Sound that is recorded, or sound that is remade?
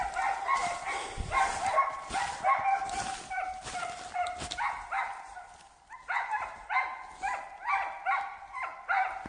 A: recorded